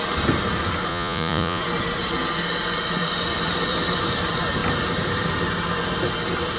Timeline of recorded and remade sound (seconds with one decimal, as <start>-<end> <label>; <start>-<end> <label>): 0.0-0.9 recorded; 0.9-1.6 remade; 1.6-6.6 recorded